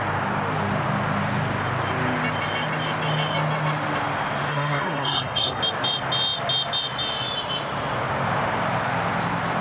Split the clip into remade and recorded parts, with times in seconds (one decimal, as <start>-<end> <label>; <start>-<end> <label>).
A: 0.0-4.5 recorded; 4.5-5.6 remade; 5.6-9.6 recorded